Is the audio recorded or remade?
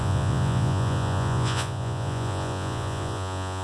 remade